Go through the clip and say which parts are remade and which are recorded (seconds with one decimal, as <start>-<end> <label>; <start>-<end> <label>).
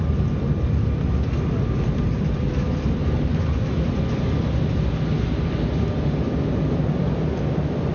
0.0-3.0 recorded; 3.0-3.7 remade; 3.7-7.9 recorded